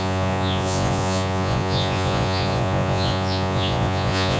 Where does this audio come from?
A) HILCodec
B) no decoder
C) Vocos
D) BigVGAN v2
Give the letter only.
C